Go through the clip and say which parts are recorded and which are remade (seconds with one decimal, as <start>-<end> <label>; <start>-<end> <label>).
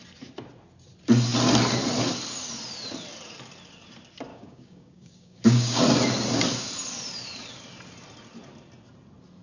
0.0-4.3 recorded; 4.3-5.8 remade; 5.8-9.4 recorded